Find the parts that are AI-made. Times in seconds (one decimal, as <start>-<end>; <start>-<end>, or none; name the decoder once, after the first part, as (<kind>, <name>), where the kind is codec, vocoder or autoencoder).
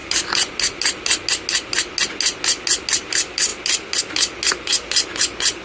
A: none